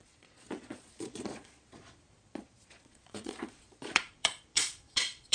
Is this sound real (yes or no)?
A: no